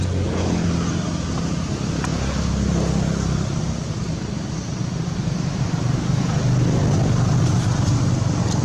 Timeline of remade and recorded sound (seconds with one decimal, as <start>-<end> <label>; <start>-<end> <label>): 0.0-4.6 recorded; 4.6-6.2 remade; 6.2-8.6 recorded